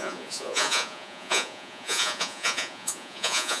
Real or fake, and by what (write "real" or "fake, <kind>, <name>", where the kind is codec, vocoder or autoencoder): fake, vocoder, Vocos